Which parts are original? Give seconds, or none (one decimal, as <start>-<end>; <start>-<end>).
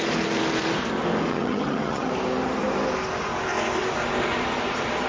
0.0-1.3; 2.1-5.1